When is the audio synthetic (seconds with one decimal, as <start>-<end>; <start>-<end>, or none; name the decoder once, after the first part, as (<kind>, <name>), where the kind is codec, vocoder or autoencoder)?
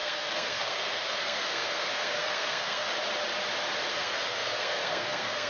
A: 0.0-2.9 (codec, SNAC); 3.9-5.5